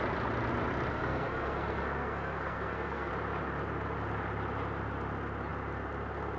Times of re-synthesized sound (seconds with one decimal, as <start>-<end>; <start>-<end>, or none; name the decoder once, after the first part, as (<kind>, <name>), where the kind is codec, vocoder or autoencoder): 0.9-3.1 (codec, SNAC)